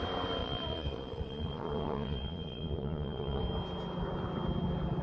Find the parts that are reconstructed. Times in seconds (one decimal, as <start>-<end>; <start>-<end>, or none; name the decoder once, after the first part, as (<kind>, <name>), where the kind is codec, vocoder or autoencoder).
0.4-3.4 (vocoder, Vocos)